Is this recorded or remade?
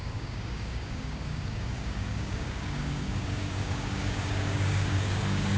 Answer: remade